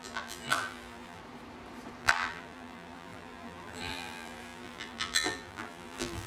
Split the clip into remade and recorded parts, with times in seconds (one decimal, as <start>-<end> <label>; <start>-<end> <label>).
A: 0.0-1.2 remade; 1.2-2.0 recorded; 2.0-6.3 remade